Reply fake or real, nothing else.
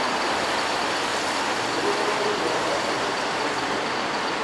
real